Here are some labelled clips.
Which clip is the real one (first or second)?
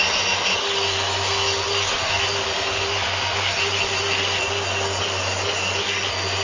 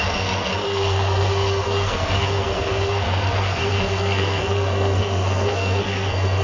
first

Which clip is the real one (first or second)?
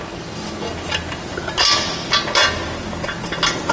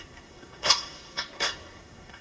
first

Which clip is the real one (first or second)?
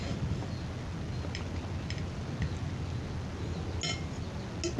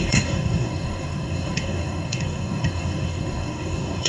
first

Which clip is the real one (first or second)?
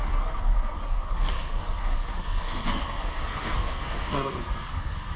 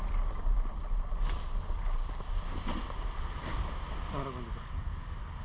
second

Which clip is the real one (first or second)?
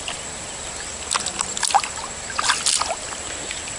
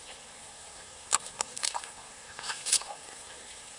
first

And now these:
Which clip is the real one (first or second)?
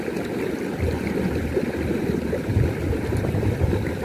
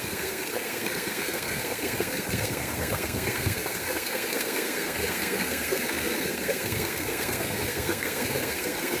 first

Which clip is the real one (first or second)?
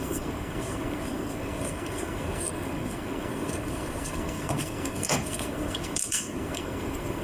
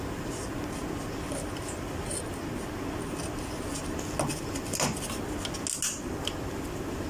second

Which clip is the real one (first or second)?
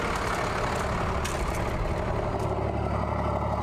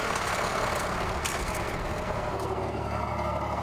first